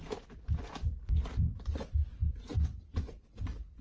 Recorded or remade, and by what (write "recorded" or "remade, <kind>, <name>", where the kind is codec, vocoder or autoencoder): recorded